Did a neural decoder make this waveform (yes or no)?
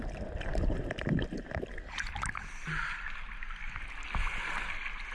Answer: no